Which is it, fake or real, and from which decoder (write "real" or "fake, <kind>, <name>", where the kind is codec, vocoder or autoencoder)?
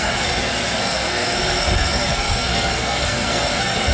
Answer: fake, codec, SNAC